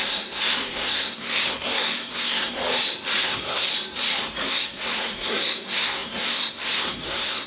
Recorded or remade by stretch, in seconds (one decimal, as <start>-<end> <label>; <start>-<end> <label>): 0.0-2.6 remade; 2.6-3.2 recorded; 3.2-3.7 remade; 3.7-4.5 recorded; 4.5-7.5 remade